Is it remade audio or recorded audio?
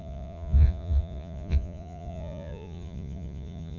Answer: remade